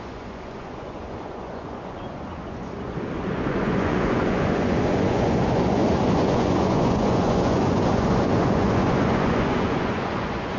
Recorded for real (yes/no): no